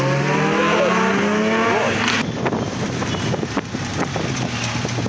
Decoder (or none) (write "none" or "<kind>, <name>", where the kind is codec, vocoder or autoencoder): none